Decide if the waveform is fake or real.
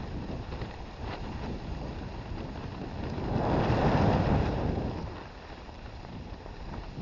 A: real